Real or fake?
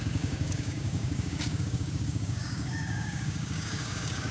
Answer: fake